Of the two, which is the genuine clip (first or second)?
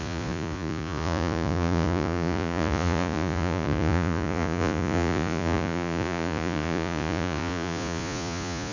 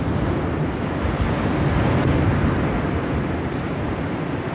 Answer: second